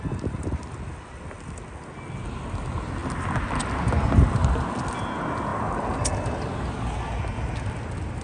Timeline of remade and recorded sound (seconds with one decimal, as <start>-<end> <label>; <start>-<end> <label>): 0.0-8.2 recorded